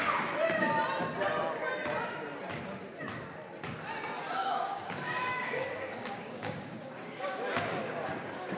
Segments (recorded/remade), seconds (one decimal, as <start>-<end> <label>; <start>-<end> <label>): 0.0-4.4 recorded; 4.4-8.6 remade